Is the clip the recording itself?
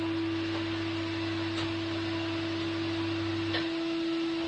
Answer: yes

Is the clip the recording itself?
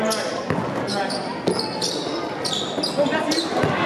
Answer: yes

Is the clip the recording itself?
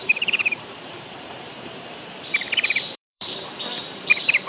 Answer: no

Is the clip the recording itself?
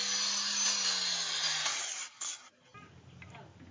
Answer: yes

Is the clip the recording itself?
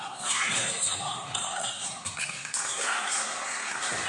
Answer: no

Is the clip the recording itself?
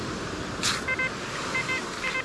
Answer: no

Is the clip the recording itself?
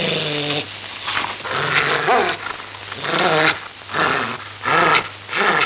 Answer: yes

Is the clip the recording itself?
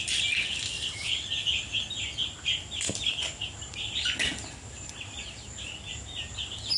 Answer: yes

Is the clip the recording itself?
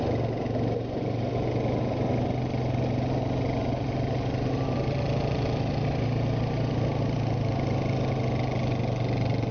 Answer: yes